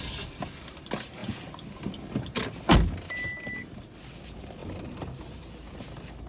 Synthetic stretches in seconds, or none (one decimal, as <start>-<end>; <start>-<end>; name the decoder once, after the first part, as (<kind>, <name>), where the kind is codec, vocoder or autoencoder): none

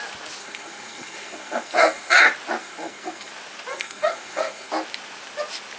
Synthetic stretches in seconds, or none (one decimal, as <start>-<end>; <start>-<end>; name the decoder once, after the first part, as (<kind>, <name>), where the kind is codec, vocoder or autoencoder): 0.4-2.2 (codec, SNAC); 2.6-3.3; 3.7-4.7

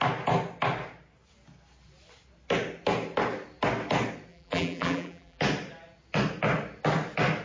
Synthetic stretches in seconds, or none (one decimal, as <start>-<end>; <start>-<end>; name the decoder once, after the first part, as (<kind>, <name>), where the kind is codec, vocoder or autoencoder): 4.3-5.4 (vocoder, BigVGAN v2)

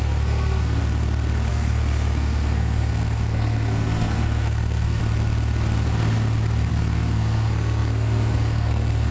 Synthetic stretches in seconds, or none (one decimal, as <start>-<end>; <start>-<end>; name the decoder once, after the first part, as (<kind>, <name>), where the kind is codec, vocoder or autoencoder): 0.0-0.8 (codec, SNAC); 1.5-5.0; 6.7-9.1

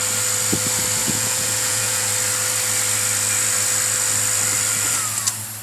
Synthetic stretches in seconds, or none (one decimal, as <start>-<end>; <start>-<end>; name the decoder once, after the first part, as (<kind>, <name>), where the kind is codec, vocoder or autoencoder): 1.0-2.1 (vocoder, Vocos)